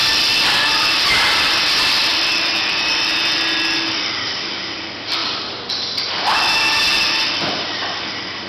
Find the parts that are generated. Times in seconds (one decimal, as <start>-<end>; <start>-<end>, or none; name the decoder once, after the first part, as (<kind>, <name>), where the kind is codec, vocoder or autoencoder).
0.0-8.5 (vocoder, BigVGAN v2)